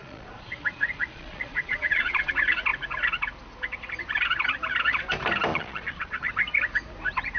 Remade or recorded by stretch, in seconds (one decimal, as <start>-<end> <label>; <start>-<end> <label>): 0.0-2.3 remade; 2.3-5.5 recorded; 5.5-6.3 remade; 6.3-7.4 recorded